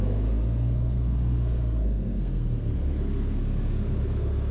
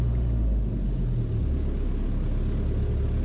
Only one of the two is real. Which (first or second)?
second